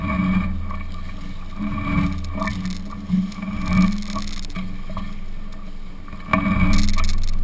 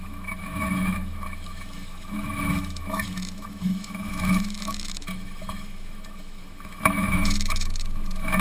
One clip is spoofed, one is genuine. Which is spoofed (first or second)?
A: second